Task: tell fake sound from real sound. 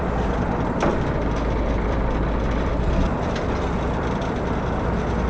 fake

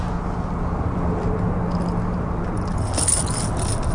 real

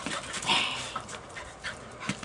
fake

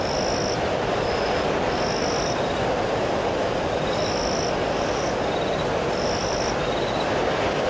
real